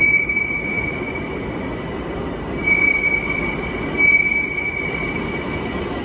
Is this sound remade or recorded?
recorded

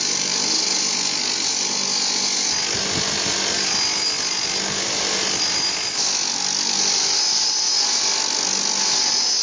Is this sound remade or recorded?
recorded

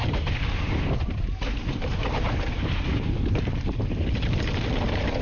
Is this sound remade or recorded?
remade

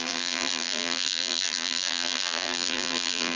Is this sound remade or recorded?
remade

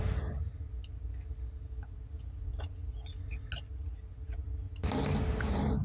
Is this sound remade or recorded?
recorded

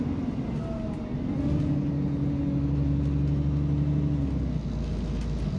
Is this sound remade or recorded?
recorded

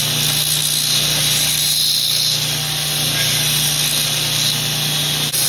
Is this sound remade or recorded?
recorded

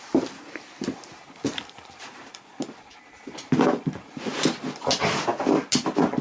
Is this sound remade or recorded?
recorded